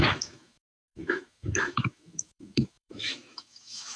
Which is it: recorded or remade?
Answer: remade